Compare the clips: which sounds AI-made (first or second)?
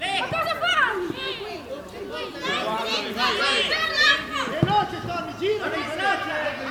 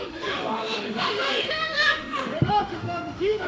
second